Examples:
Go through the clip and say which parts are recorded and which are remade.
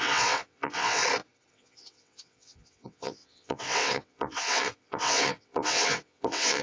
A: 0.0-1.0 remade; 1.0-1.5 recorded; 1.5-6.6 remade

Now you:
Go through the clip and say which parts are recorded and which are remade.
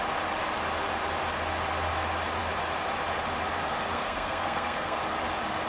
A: 0.0-3.9 recorded; 3.9-5.0 remade; 5.0-5.7 recorded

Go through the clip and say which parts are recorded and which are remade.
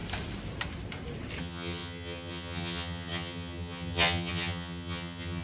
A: 0.0-1.4 recorded; 1.4-5.4 remade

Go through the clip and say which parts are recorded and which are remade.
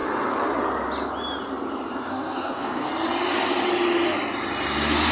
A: 0.0-2.1 recorded; 2.1-2.9 remade; 2.9-5.1 recorded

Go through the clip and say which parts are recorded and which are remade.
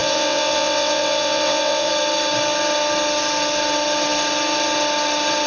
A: 0.0-1.9 remade; 1.9-5.5 recorded